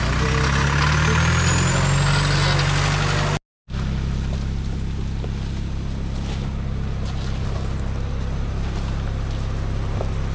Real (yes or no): yes